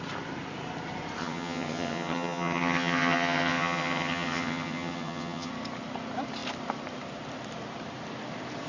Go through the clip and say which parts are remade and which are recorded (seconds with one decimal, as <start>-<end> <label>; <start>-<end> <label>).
0.0-1.2 recorded; 1.2-5.5 remade; 5.5-8.7 recorded